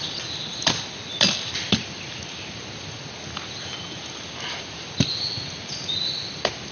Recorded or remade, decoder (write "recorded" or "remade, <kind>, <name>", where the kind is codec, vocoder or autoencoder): recorded